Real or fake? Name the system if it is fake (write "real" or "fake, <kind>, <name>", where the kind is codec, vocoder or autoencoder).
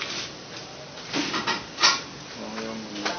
real